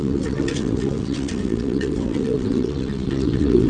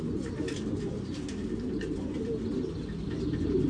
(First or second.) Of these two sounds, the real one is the second